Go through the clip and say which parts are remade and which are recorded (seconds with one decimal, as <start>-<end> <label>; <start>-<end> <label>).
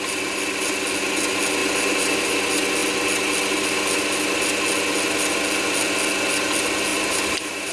0.0-1.6 recorded; 1.6-2.3 remade; 2.3-6.9 recorded; 6.9-7.7 remade